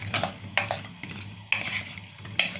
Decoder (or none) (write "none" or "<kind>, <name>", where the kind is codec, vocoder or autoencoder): none